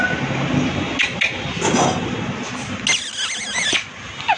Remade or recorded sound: recorded